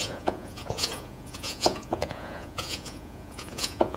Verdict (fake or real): fake